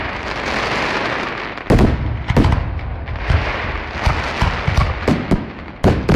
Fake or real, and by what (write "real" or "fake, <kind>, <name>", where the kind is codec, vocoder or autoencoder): real